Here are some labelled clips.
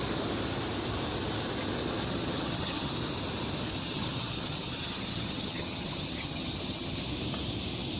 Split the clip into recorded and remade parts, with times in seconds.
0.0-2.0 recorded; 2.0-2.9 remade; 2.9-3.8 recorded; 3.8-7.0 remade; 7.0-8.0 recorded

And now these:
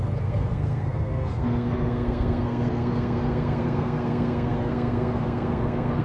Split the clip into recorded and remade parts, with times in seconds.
0.0-6.0 remade

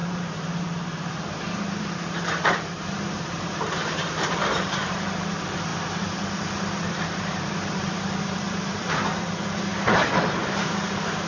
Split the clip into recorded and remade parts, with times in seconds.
0.0-5.7 remade; 5.7-6.9 recorded; 6.9-9.7 remade; 9.7-10.4 recorded; 10.4-11.3 remade

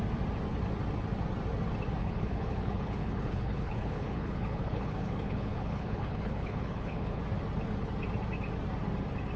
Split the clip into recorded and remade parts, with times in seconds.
0.0-2.0 recorded; 2.0-7.2 remade; 7.2-9.4 recorded